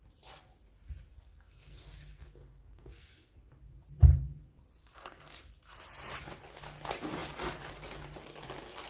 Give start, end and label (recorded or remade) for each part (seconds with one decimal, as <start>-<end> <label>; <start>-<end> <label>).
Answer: 0.0-1.1 recorded; 1.1-3.5 remade; 3.5-4.8 recorded; 4.8-5.4 remade; 5.4-8.9 recorded